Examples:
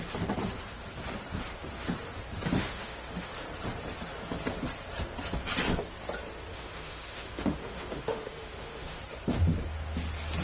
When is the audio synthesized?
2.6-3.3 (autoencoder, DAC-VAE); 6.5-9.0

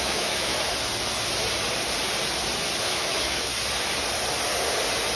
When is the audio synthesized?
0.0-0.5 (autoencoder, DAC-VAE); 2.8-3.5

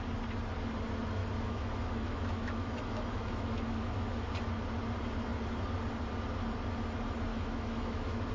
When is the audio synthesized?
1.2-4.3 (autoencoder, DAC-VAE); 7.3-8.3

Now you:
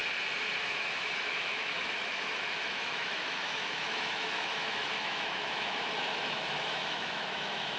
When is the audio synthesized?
0.5-7.8 (autoencoder, DAC-VAE)